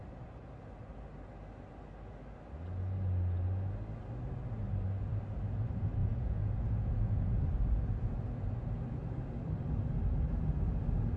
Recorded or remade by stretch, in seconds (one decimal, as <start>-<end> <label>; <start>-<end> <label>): 0.0-6.0 recorded; 6.0-7.4 remade; 7.4-11.2 recorded